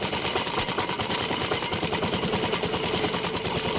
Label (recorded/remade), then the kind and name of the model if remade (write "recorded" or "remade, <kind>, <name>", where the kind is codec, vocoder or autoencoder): recorded